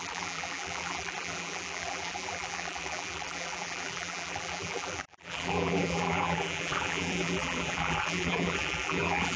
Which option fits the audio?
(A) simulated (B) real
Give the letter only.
A